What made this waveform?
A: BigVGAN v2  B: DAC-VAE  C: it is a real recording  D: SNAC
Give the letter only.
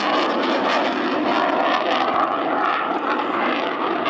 C